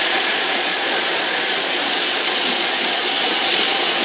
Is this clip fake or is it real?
fake